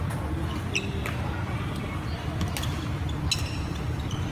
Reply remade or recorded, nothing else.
recorded